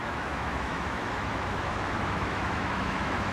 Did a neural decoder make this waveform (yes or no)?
yes